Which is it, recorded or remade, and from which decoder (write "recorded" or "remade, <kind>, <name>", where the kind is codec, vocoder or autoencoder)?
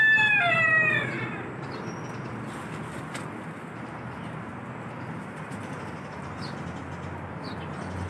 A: recorded